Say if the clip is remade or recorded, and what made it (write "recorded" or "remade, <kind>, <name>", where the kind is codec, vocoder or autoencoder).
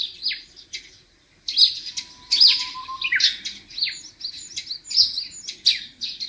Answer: recorded